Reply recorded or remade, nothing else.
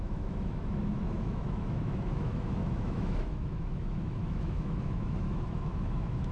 remade